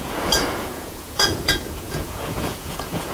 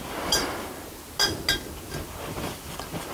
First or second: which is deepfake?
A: first